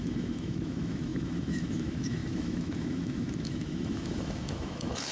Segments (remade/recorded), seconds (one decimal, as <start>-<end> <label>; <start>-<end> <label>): 0.0-5.1 remade